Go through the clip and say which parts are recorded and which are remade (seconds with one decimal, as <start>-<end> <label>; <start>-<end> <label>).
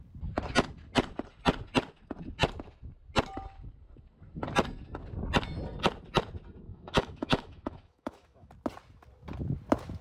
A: 0.0-6.7 recorded; 6.7-8.5 remade; 8.5-10.0 recorded